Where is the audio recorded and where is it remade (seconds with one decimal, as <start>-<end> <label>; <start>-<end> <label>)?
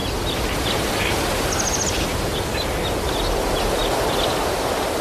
0.0-5.0 recorded